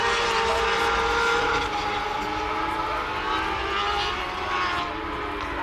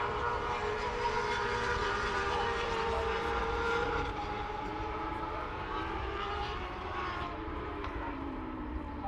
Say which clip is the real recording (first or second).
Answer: first